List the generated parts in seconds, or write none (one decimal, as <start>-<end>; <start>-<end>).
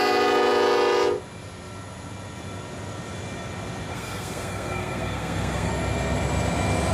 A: 3.9-5.7